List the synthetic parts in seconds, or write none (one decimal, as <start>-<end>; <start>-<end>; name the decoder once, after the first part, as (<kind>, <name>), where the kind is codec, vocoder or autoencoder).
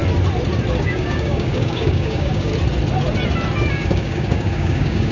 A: 0.8-2.5 (codec, DAC); 3.7-5.1